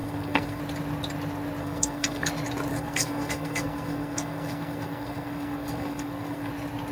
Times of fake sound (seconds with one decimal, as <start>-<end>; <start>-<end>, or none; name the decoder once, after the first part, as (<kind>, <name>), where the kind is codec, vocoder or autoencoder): 0.0-0.6 (codec, SNAC); 1.6-2.3; 2.7-6.5